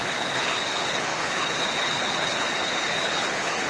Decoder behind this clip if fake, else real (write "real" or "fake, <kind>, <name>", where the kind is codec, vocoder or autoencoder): fake, codec, HILCodec